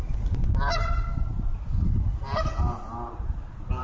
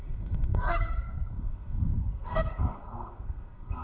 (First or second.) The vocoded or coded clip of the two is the second